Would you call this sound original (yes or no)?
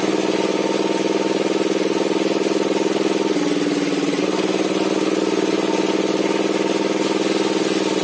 yes